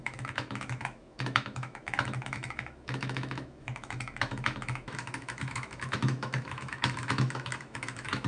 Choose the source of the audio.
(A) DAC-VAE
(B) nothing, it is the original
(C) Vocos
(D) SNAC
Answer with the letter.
A